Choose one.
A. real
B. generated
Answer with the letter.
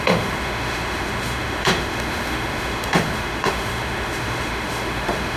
B